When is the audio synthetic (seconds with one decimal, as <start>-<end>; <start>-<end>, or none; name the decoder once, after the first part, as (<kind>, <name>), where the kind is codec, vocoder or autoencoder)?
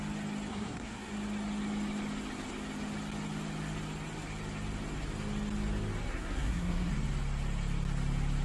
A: 0.5-1.1 (codec, SNAC); 6.1-6.9